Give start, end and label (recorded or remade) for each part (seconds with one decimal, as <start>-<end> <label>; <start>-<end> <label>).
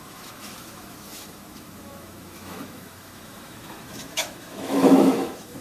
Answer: 0.0-5.6 remade